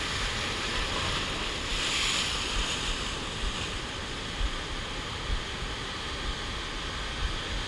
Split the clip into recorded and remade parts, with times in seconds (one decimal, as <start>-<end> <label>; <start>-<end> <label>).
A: 0.0-7.7 recorded